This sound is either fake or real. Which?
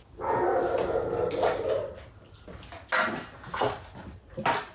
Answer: real